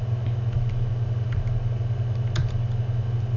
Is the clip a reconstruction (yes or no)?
no